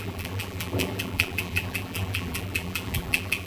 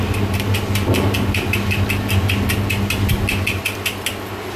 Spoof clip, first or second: first